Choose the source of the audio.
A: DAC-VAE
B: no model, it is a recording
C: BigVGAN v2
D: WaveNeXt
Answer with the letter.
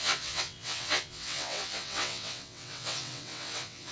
D